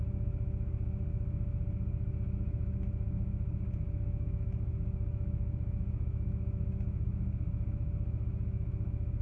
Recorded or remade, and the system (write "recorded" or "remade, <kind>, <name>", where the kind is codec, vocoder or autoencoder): remade, autoencoder, DAC-VAE